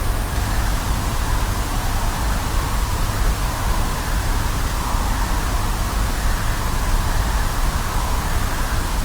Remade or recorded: recorded